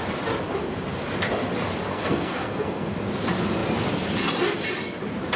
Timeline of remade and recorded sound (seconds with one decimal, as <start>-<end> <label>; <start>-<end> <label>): 0.0-1.9 recorded; 1.9-2.9 remade; 2.9-5.4 recorded